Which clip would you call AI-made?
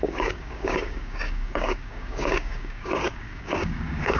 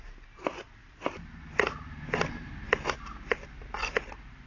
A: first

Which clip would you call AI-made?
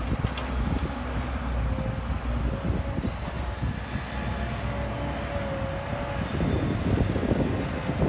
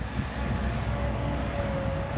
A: second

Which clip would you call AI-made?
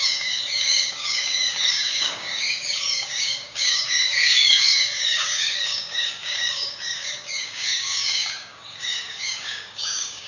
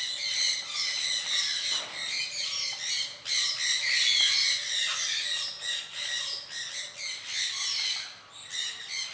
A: first